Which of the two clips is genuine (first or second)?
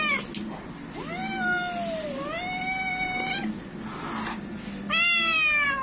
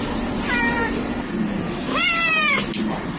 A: first